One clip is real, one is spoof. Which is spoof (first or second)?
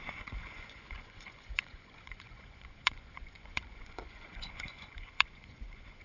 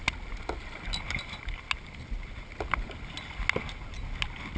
first